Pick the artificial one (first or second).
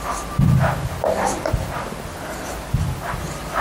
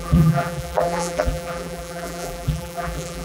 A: second